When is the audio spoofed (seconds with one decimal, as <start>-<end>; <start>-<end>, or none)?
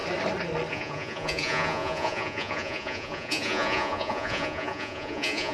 0.7-5.5